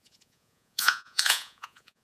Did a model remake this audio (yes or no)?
yes